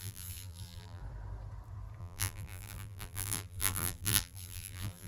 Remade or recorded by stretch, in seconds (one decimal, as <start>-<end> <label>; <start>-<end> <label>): 0.0-1.0 remade; 1.0-2.0 recorded; 2.0-5.1 remade